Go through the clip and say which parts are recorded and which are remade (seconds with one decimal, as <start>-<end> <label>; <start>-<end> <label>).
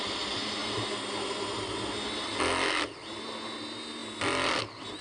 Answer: 0.0-5.0 recorded